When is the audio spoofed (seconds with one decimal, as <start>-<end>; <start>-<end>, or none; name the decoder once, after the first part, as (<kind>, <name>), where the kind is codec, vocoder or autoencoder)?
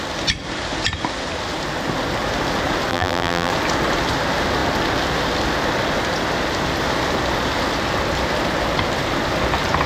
2.9-3.5 (vocoder, BigVGAN v2)